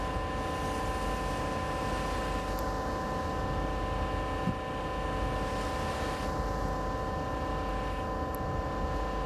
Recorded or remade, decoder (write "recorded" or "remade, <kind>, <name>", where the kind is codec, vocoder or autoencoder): recorded